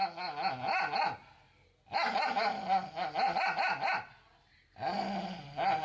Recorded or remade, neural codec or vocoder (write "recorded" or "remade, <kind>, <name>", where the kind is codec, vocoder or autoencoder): recorded